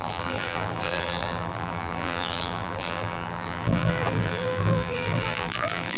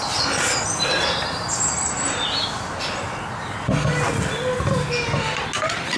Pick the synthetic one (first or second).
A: first